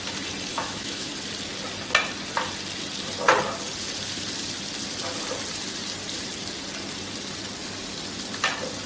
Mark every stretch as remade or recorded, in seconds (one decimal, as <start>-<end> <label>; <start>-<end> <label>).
0.0-0.5 recorded; 0.5-1.1 remade; 1.1-8.9 recorded